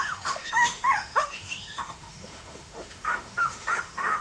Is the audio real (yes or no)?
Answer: no